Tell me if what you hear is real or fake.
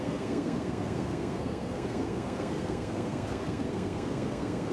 fake